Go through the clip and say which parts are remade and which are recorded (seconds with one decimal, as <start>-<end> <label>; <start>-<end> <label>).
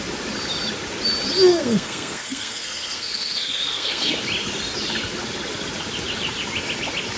0.0-1.5 recorded; 1.5-4.1 remade; 4.1-7.2 recorded